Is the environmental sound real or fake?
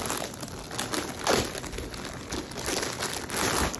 real